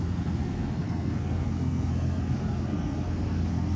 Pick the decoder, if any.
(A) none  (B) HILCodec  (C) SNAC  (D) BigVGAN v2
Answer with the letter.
C